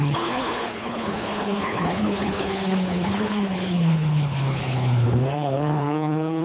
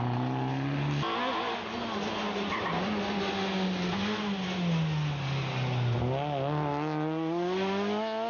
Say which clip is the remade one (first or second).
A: first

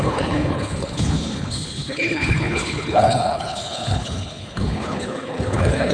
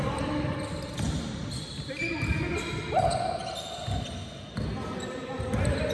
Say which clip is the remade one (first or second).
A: first